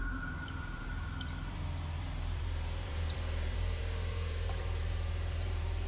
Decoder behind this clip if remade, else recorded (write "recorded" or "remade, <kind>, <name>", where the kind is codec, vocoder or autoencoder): remade, vocoder, BigVGAN v2